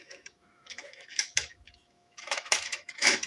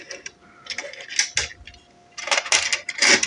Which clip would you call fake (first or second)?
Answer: first